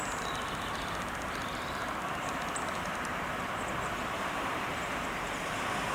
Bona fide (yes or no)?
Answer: no